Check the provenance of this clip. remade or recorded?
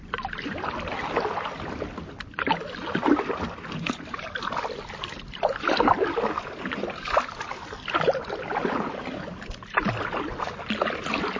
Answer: recorded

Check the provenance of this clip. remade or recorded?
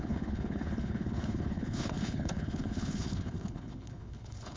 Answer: remade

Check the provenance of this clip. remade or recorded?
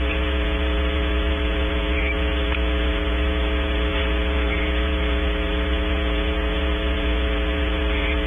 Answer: remade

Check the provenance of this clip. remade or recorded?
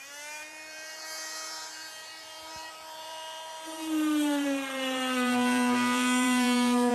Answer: remade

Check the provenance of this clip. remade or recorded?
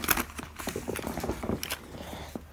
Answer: recorded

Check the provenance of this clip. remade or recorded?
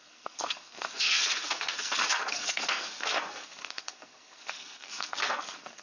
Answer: remade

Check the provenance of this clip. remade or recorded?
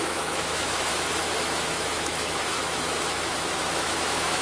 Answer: remade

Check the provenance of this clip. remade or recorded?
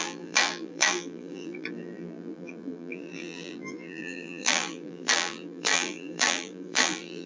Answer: remade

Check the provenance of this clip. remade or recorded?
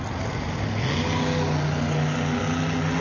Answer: recorded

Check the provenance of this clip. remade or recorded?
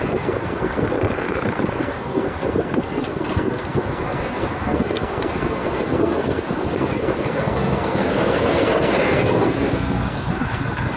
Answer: remade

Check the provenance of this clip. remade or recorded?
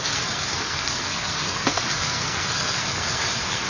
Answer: remade